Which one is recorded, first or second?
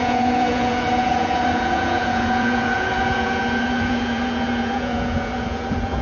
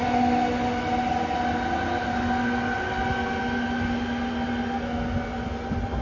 second